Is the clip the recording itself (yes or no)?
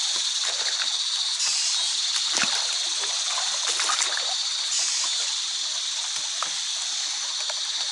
no